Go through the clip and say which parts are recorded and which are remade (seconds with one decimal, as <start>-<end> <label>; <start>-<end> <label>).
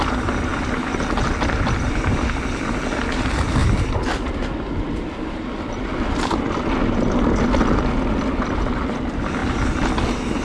0.0-10.4 recorded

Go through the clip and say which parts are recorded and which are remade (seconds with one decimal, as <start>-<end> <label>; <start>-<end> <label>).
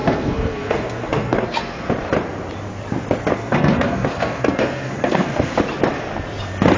0.0-1.9 remade; 1.9-3.3 recorded; 3.3-5.6 remade; 5.6-6.8 recorded